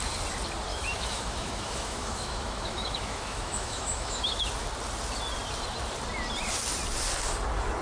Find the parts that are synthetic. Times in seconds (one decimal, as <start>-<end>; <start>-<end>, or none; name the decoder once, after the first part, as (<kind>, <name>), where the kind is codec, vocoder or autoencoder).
0.7-4.5 (autoencoder, DAC-VAE)